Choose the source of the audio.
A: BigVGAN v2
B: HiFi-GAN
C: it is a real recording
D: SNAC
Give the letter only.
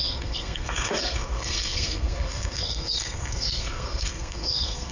D